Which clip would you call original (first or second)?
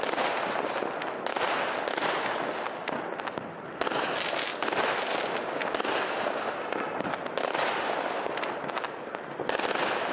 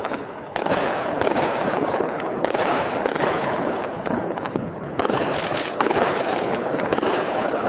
first